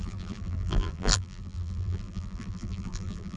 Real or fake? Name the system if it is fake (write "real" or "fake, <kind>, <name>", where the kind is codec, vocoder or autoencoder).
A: fake, vocoder, BigVGAN v2